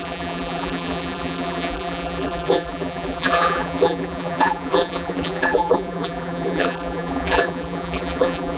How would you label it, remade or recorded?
remade